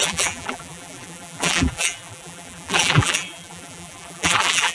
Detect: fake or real fake